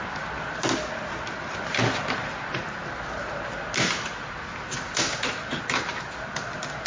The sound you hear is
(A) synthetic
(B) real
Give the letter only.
B